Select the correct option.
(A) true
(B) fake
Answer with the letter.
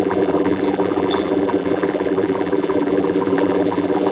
B